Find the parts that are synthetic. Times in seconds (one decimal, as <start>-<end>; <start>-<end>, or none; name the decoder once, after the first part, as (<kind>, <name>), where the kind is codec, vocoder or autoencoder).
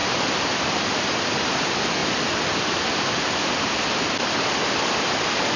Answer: none